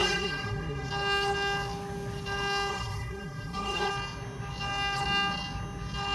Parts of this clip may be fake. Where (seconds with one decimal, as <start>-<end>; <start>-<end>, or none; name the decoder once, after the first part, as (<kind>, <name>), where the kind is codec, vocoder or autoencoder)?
0.0-0.9 (codec, SNAC); 2.7-3.9